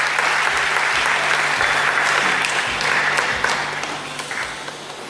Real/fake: real